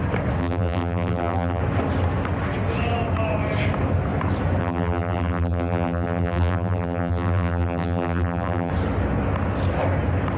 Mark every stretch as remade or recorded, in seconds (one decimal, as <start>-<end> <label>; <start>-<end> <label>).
0.0-0.4 recorded; 0.4-1.6 remade; 1.6-4.6 recorded; 4.6-8.7 remade; 8.7-10.4 recorded